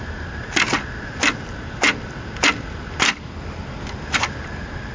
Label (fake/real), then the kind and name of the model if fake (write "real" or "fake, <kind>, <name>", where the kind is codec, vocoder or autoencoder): real